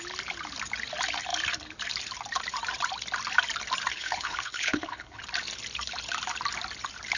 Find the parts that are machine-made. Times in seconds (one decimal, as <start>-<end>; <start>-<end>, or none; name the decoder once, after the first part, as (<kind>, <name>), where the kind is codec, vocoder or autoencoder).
3.9-5.2 (codec, HILCodec)